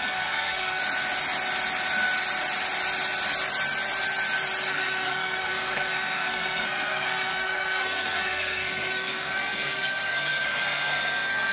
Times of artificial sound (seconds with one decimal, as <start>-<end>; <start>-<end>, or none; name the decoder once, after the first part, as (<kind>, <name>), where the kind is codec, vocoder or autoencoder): 0.0-0.8 (codec, SNAC); 4.7-11.5